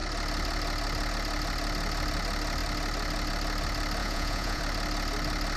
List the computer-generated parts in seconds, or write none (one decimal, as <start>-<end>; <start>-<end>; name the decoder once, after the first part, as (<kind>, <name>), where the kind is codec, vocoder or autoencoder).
4.0-4.6 (vocoder, Vocos)